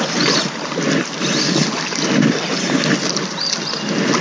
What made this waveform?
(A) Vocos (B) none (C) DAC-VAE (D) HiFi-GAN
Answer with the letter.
B